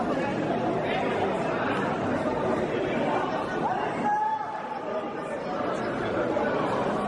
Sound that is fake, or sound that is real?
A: real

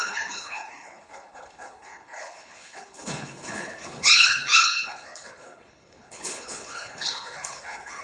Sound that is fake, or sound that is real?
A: fake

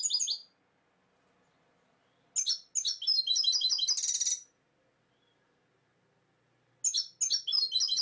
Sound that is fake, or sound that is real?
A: real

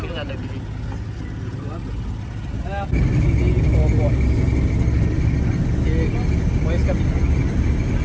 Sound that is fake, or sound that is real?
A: real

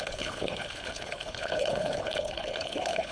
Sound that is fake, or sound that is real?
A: fake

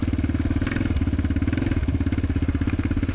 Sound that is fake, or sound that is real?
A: real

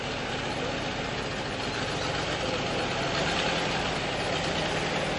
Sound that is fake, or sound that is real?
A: real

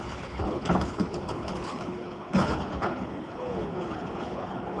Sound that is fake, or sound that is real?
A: fake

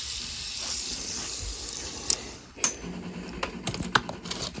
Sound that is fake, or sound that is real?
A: real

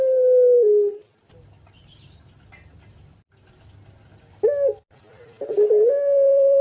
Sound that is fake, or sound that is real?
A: real